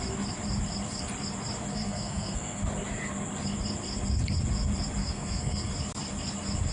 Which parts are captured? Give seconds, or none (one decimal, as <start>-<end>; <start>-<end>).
0.0-1.7; 2.6-5.0; 5.7-6.7